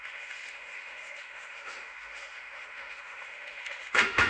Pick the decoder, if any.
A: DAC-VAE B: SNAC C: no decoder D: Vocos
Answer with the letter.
A